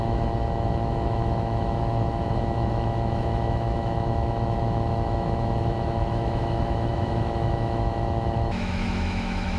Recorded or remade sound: remade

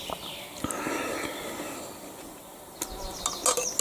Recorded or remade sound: recorded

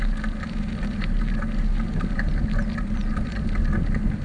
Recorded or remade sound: recorded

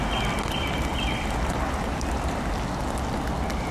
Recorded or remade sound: recorded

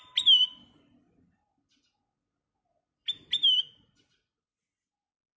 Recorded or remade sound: recorded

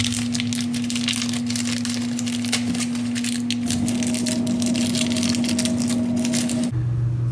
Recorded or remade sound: recorded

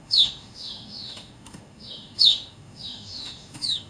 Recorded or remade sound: remade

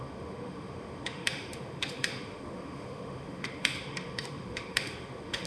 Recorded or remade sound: remade